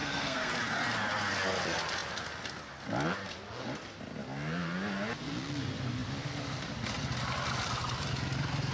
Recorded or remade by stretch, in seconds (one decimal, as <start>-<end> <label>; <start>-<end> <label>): 0.0-0.5 remade; 0.5-8.7 recorded